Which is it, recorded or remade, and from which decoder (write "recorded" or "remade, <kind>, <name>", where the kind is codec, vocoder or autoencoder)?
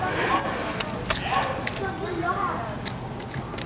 recorded